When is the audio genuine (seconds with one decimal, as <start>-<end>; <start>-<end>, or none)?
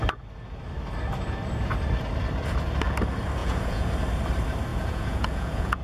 0.0-3.4; 3.9-4.7